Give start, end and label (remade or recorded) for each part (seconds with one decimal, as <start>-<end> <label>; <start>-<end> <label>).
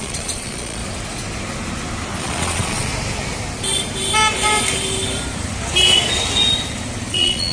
0.0-0.8 remade; 0.8-2.2 recorded; 2.2-2.9 remade; 2.9-7.1 recorded; 7.1-7.5 remade